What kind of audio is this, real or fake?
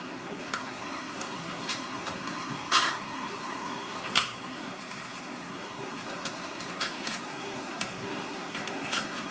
fake